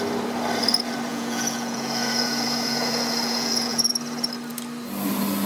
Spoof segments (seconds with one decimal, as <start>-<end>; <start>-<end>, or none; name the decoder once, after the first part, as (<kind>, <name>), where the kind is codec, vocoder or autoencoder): 1.1-3.9 (vocoder, Vocos)